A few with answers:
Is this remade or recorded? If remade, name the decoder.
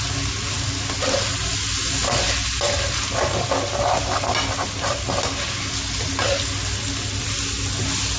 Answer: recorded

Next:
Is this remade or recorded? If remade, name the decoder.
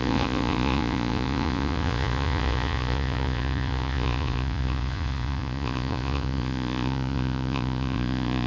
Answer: remade, vocoder, Vocos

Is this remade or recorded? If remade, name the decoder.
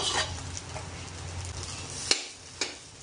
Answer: recorded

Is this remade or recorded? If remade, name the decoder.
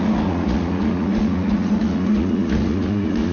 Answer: remade, vocoder, Vocos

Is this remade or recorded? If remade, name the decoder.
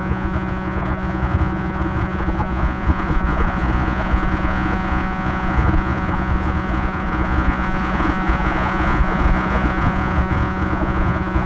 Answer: remade, vocoder, Vocos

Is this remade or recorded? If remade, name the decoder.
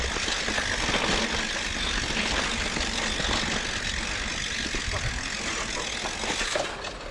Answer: recorded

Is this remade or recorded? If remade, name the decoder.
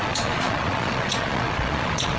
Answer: remade, vocoder, Vocos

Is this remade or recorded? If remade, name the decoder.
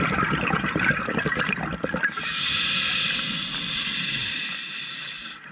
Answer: recorded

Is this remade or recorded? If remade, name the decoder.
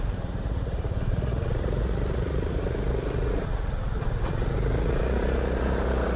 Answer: remade, vocoder, Vocos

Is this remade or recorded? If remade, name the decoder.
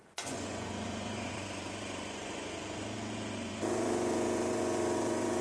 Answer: remade, vocoder, Vocos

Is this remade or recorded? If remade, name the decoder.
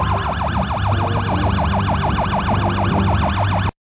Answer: recorded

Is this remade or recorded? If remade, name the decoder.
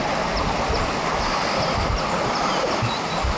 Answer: recorded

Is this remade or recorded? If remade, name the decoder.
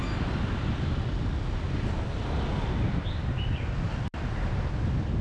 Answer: recorded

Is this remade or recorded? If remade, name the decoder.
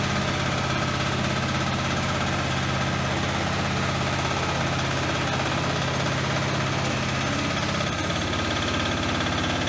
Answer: recorded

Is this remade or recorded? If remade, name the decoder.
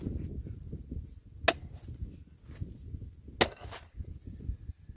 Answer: recorded